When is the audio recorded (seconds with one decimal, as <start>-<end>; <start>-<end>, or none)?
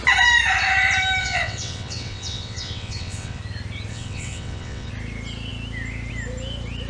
0.0-1.2; 3.4-3.9; 4.9-6.9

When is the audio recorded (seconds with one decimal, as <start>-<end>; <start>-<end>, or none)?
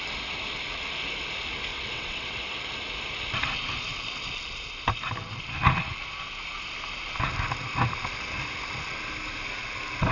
0.0-1.7; 2.6-10.1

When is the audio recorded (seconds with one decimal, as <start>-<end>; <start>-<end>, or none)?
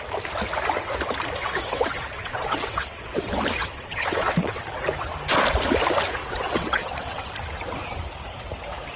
0.0-1.4; 3.2-3.6; 4.6-6.2; 7.3-9.0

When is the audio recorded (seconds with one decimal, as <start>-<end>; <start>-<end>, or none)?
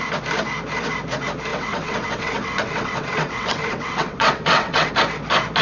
0.0-1.5; 4.9-5.6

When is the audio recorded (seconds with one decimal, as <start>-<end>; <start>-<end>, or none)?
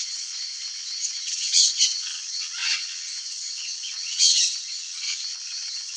none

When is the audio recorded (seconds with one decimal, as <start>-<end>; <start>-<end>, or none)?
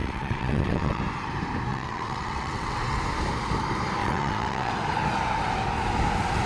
1.0-1.7; 3.0-4.0; 4.7-6.5